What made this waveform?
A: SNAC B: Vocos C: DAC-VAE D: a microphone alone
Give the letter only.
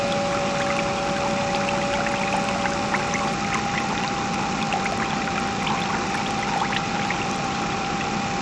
D